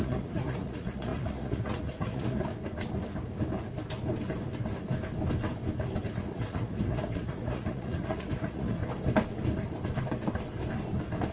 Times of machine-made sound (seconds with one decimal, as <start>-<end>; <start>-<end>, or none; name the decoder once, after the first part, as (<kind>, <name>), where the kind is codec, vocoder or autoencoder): 0.0-2.5 (vocoder, Vocos); 6.2-8.8